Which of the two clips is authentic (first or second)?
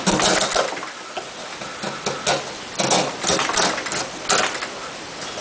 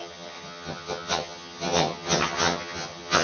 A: first